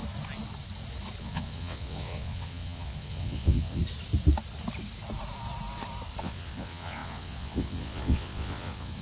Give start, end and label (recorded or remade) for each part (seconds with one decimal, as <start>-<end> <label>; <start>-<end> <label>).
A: 0.0-1.2 recorded; 1.2-3.8 remade; 3.8-6.2 recorded; 6.2-9.0 remade